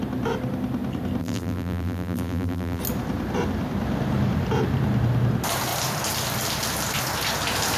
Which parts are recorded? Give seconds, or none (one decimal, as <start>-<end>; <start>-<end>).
0.0-1.2; 2.8-7.8